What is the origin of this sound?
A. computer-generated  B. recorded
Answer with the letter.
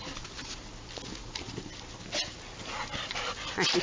B